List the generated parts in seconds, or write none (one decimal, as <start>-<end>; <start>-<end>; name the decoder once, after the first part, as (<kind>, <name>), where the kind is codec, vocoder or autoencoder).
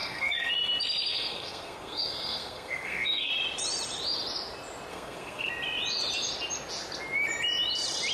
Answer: 0.0-0.5 (codec, SNAC); 1.1-3.3; 4.9-5.5